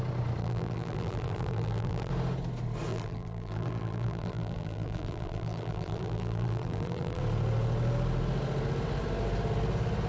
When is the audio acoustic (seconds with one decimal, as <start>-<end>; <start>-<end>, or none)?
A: 0.0-0.4; 2.1-2.9; 7.2-10.1